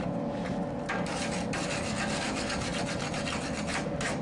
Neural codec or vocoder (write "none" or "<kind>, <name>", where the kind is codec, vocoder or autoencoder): none